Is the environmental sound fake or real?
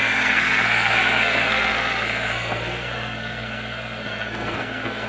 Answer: fake